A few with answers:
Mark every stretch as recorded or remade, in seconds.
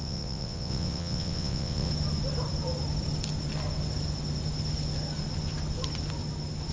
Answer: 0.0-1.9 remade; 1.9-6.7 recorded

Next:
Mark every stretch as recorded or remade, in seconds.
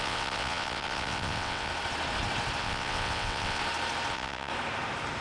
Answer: 0.0-1.7 remade; 1.7-2.6 recorded; 2.6-3.6 remade; 3.6-4.1 recorded; 4.1-4.5 remade; 4.5-5.2 recorded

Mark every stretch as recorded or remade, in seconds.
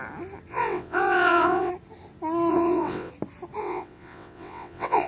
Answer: 0.0-0.5 recorded; 0.5-1.7 remade; 1.7-2.5 recorded; 2.5-3.1 remade; 3.1-3.6 recorded; 3.6-5.1 remade